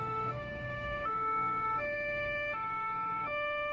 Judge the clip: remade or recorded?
remade